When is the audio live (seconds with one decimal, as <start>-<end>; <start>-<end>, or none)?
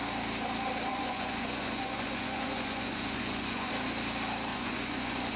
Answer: 0.0-0.9; 3.7-4.5